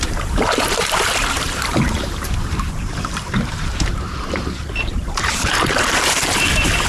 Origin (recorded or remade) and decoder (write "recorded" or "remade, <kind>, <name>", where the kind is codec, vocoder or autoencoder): remade, vocoder, BigVGAN v2